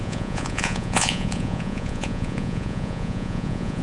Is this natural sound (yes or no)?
no